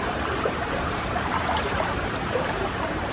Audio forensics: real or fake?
fake